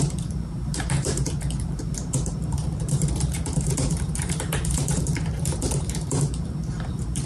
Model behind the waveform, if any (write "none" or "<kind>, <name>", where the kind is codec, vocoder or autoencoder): vocoder, BigVGAN v2